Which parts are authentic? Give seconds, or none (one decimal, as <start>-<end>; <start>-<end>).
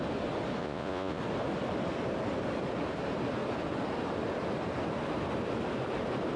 0.0-0.6; 1.2-6.4